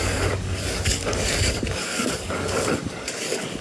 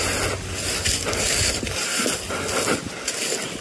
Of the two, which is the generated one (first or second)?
first